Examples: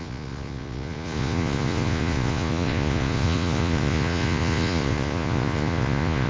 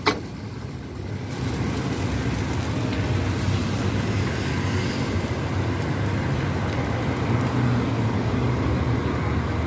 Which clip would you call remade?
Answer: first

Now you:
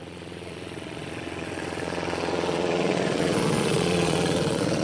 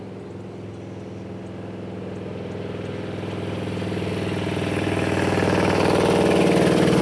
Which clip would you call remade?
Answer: first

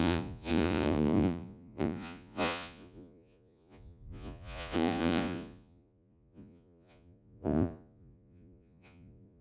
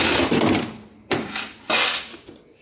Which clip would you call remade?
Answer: first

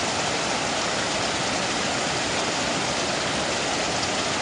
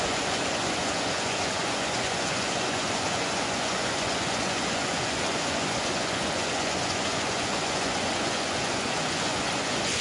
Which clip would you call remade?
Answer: second